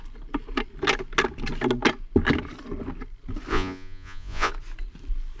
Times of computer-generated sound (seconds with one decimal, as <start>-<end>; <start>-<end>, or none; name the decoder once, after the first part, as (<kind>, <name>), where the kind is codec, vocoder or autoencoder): 3.5-4.5 (vocoder, Vocos)